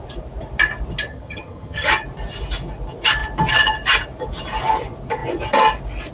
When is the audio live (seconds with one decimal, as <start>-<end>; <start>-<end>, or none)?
0.0-1.1; 1.9-6.1